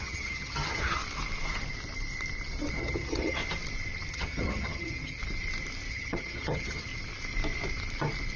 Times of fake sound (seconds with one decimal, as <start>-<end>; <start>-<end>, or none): 0.0-1.0; 2.8-3.4; 4.1-5.2; 5.9-6.9